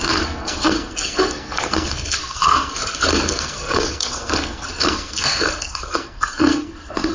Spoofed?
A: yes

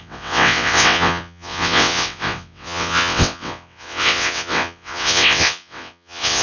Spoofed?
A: yes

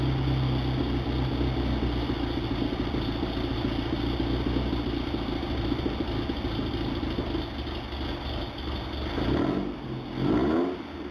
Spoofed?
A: no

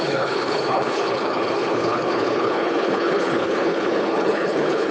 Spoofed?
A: yes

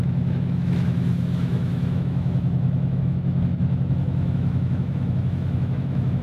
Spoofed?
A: yes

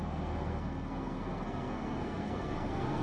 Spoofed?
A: yes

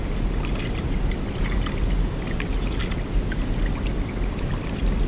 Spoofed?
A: no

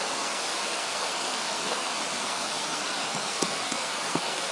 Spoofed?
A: yes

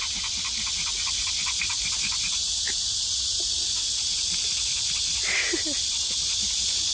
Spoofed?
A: no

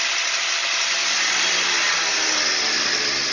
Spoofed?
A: no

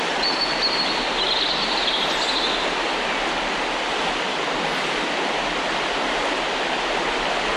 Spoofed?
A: no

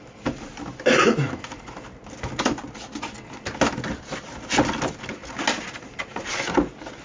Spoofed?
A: no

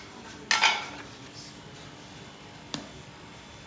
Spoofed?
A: no